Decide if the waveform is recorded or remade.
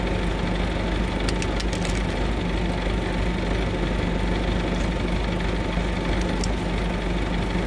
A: recorded